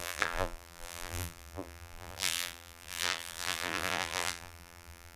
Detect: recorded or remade remade